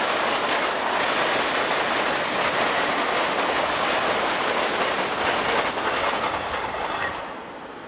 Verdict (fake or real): real